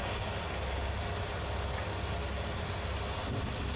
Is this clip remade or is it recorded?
recorded